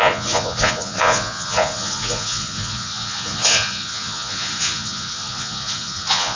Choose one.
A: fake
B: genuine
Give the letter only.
A